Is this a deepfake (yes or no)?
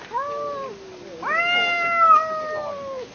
no